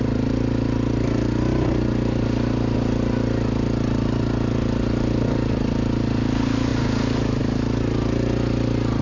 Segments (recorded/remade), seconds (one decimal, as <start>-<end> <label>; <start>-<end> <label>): 0.0-9.0 recorded